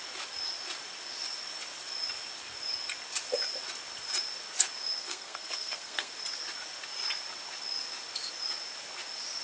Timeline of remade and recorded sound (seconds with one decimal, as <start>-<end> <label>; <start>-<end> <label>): 0.0-5.0 recorded; 5.0-6.1 remade; 6.1-9.4 recorded